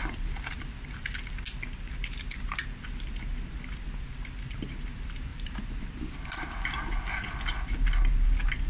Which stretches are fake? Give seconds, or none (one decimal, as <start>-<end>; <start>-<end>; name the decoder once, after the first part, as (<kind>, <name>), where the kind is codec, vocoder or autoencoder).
0.0-0.9 (vocoder, BigVGAN v2); 5.3-6.6